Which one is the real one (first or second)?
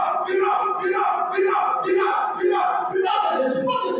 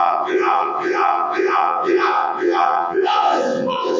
first